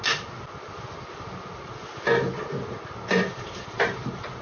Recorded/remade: recorded